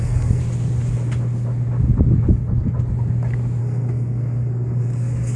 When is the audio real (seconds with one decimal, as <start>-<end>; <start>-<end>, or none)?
0.4-3.6